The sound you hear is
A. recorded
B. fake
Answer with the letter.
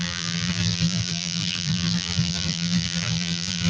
B